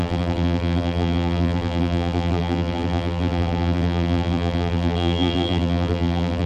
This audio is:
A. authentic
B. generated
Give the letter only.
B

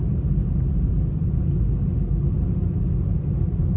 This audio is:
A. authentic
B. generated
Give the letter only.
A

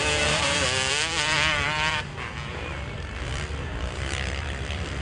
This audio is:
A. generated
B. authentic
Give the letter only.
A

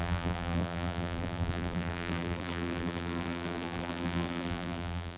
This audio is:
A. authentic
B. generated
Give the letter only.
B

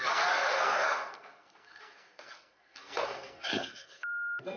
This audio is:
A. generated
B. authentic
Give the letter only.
A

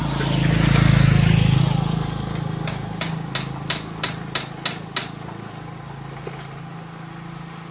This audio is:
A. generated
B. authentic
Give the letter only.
B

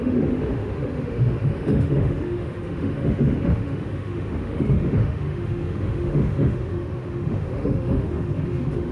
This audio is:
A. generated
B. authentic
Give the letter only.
A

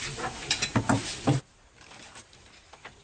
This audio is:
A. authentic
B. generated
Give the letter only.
A